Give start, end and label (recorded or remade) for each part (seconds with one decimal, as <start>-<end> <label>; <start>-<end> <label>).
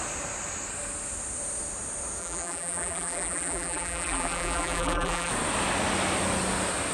0.0-2.2 recorded; 2.2-5.3 remade; 5.3-6.9 recorded